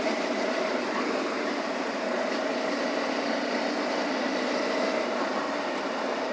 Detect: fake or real fake